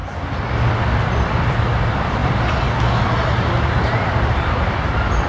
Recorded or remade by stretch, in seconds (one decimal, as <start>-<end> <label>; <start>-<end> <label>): 0.0-2.2 remade; 2.2-3.7 recorded; 3.7-5.3 remade

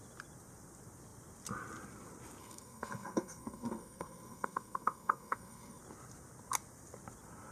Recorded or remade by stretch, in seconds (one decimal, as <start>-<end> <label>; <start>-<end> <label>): 0.0-2.4 recorded; 2.4-5.8 remade; 5.8-7.5 recorded

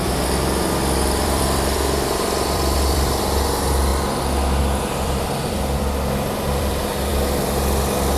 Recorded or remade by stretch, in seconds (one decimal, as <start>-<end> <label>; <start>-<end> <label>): 0.0-3.9 remade; 3.9-4.6 recorded; 4.6-7.1 remade; 7.1-8.2 recorded

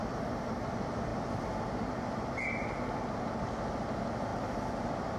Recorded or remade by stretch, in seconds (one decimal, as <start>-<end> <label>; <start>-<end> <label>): 0.0-0.7 remade; 0.7-1.1 recorded; 1.1-2.1 remade; 2.1-4.3 recorded; 4.3-5.2 remade

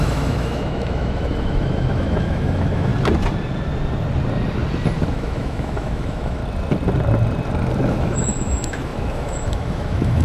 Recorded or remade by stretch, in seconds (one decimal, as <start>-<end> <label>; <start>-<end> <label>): 0.0-2.9 remade; 2.9-5.1 recorded; 5.1-6.4 remade; 6.4-7.9 recorded; 7.9-10.2 remade

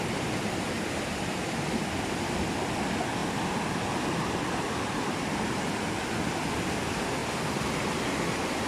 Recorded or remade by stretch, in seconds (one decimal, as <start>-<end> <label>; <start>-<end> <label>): 0.0-8.7 recorded

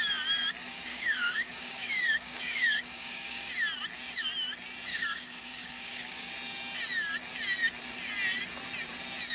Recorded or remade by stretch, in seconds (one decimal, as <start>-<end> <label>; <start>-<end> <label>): 0.0-0.9 recorded; 0.9-3.5 remade; 3.5-4.9 recorded; 4.9-6.3 remade; 6.3-9.3 recorded

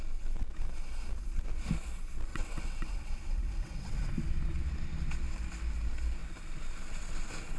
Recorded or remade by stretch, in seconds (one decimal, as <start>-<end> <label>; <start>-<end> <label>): 0.0-2.3 recorded; 2.3-4.1 remade; 4.1-7.6 recorded